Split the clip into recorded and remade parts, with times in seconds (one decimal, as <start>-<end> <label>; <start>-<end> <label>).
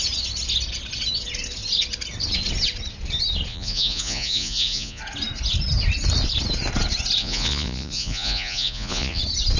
0.0-3.5 recorded; 3.5-5.0 remade; 5.0-7.2 recorded; 7.2-9.2 remade; 9.2-9.6 recorded